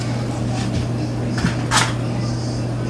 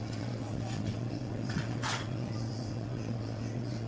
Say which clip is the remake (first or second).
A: second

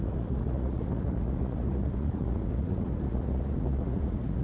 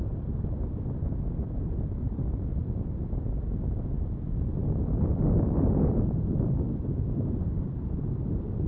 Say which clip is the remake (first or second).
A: first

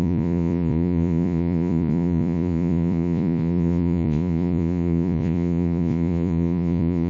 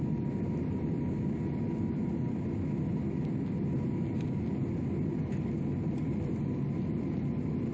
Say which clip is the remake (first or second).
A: first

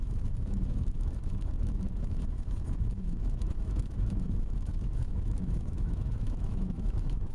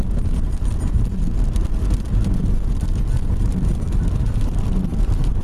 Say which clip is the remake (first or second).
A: first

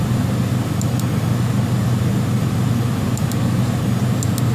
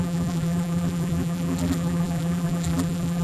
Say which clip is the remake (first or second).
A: second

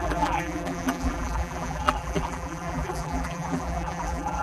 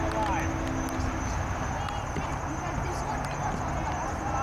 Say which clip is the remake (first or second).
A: first